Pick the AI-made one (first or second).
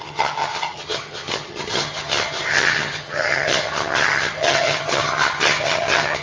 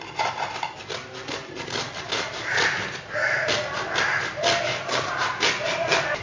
first